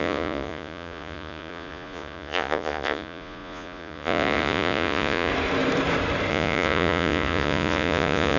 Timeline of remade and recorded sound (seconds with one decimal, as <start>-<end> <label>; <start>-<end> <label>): 0.0-5.3 remade; 5.3-6.3 recorded; 6.3-8.4 remade